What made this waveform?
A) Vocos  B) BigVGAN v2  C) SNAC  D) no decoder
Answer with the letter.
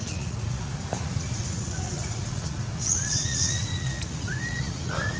A